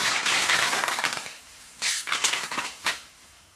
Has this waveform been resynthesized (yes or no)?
yes